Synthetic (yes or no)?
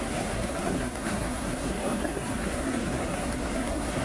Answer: yes